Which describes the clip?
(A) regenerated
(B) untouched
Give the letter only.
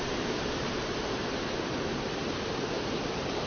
A